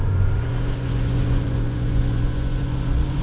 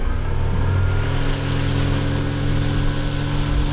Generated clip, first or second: first